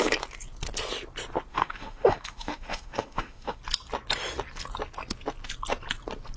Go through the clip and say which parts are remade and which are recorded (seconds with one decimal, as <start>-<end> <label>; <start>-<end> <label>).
0.0-1.5 recorded; 1.5-3.6 remade; 3.6-6.4 recorded